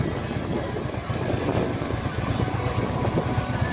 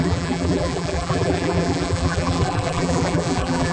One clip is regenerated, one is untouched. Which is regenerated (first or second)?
second